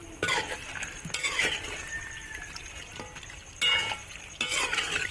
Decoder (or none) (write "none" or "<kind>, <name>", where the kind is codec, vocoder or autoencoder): none